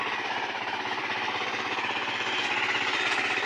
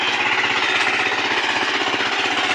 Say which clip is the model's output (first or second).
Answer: first